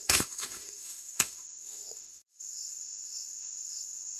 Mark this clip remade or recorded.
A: remade